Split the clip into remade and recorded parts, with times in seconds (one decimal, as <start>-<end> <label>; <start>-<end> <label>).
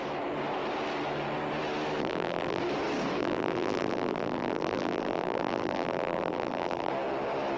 0.0-2.0 recorded; 2.0-2.6 remade; 2.6-3.2 recorded; 3.2-6.9 remade; 6.9-7.6 recorded